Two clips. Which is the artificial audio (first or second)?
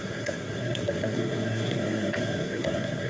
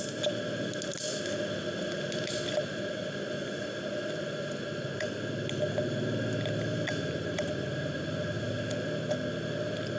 first